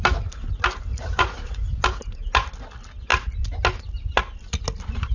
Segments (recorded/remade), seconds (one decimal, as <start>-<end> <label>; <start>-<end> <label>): 0.0-0.9 recorded; 0.9-1.6 remade; 1.6-5.1 recorded